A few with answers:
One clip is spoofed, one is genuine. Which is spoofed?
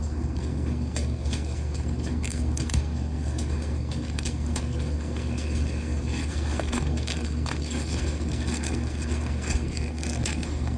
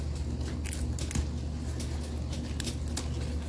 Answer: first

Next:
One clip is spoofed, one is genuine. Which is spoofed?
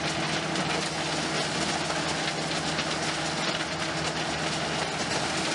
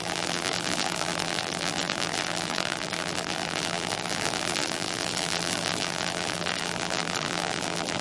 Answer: second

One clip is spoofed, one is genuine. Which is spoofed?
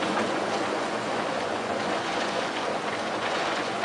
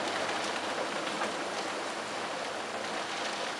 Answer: first